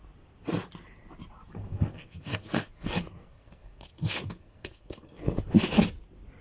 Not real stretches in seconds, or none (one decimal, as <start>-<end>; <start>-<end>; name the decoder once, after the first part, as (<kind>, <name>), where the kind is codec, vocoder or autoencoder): 1.6-5.4 (codec, SNAC)